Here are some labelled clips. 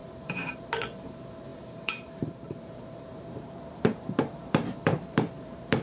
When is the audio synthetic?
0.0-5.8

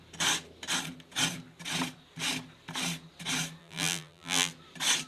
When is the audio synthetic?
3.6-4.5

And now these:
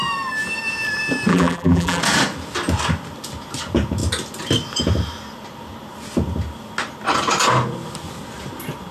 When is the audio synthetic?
1.3-2.0

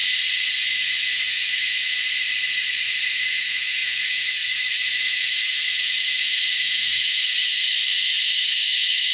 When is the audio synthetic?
0.7-2.0; 3.2-9.1